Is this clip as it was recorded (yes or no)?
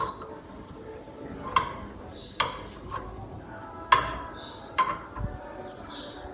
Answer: yes